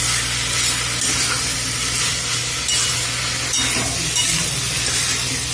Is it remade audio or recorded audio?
recorded